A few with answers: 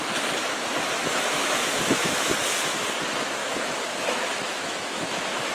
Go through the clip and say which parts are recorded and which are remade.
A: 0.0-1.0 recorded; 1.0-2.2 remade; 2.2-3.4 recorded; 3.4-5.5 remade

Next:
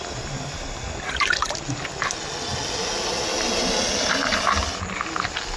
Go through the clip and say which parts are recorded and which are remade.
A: 0.0-5.6 recorded

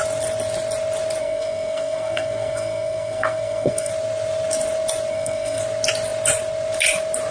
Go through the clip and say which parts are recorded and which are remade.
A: 0.0-1.2 recorded; 1.2-3.9 remade; 3.9-5.1 recorded; 5.1-5.6 remade; 5.6-7.3 recorded

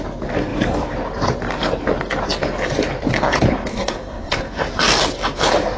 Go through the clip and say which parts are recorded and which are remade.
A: 0.0-3.7 recorded; 3.7-4.7 remade; 4.7-5.8 recorded

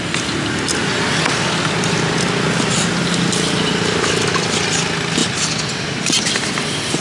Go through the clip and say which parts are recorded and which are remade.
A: 0.0-7.0 recorded

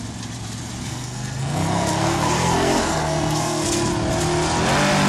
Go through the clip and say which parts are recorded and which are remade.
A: 0.0-0.8 recorded; 0.8-3.9 remade; 3.9-5.1 recorded

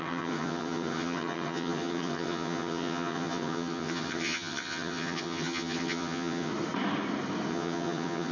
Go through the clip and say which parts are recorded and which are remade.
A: 0.0-6.5 remade; 6.5-7.5 recorded; 7.5-8.3 remade

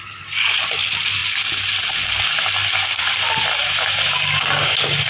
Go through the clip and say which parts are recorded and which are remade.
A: 0.0-5.1 recorded